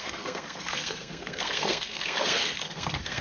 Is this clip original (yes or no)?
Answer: no